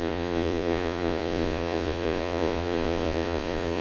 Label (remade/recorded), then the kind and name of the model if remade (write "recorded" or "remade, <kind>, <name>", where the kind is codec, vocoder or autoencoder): remade, vocoder, Vocos